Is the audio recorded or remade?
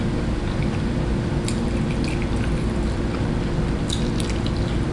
recorded